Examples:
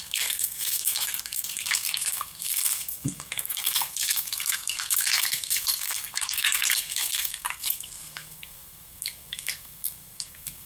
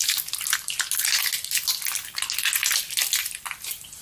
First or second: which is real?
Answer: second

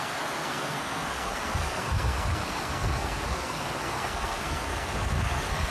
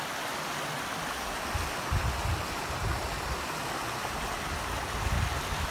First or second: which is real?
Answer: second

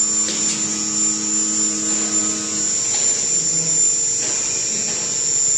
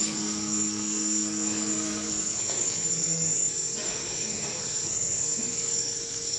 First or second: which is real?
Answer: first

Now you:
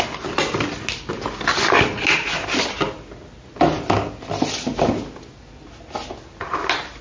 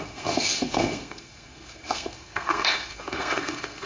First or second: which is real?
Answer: first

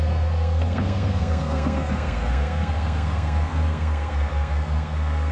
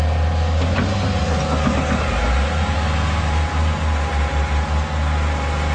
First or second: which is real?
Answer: second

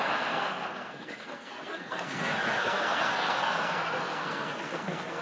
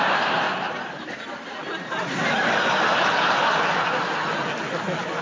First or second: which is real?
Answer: second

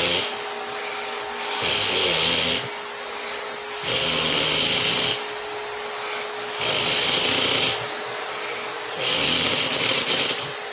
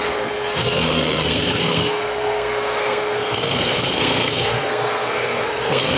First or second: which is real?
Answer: first